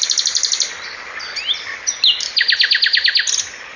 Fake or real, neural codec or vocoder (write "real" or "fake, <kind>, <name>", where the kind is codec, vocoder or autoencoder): real